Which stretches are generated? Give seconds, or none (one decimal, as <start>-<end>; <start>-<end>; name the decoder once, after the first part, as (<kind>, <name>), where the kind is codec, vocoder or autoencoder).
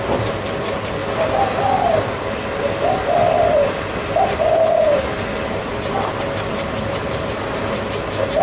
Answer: none